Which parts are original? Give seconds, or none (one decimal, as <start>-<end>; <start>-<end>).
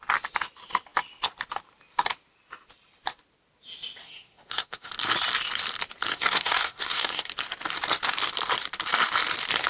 0.0-4.0; 4.9-6.1; 7.3-9.7